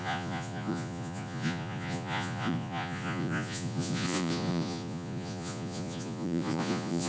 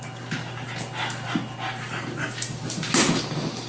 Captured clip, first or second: second